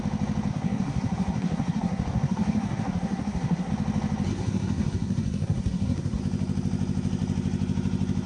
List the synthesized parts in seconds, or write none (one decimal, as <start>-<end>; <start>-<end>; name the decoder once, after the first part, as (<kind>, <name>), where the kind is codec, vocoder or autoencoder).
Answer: 0.5-3.7 (codec, SNAC); 4.3-6.2